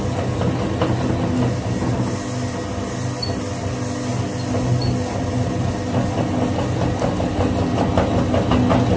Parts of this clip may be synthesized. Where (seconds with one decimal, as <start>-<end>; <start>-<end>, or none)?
none